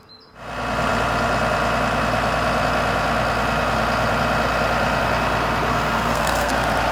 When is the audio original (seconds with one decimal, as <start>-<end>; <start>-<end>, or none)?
0.0-5.7; 6.5-6.9